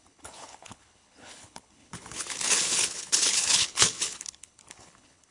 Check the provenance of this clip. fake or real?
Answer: fake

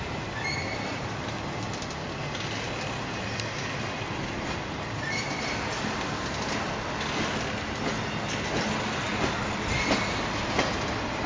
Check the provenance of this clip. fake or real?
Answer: real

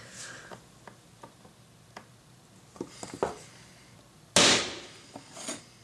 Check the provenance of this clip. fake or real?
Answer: real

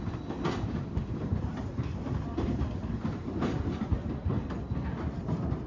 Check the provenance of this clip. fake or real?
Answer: real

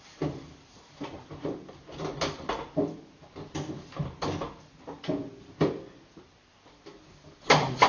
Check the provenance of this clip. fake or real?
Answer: real